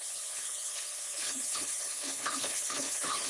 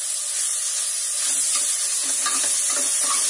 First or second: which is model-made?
first